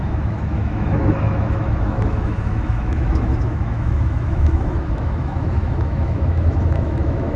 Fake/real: fake